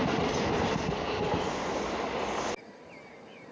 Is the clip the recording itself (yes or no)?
yes